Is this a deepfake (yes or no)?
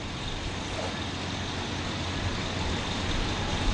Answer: no